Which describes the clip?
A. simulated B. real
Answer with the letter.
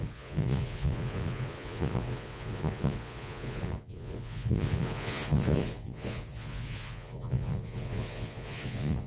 A